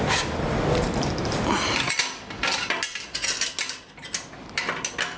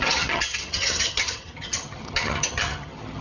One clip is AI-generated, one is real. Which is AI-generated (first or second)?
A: second